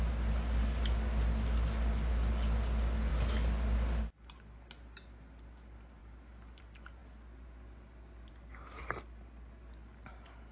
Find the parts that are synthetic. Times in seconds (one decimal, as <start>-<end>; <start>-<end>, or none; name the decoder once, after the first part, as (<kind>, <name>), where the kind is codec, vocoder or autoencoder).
none